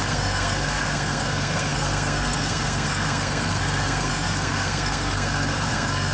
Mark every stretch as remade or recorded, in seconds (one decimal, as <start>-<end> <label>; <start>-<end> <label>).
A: 0.0-6.1 remade